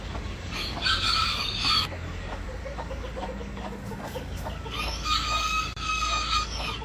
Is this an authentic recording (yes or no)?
no